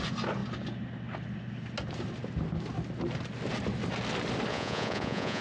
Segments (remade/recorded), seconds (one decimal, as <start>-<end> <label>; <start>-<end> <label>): 0.0-4.5 recorded; 4.5-5.4 remade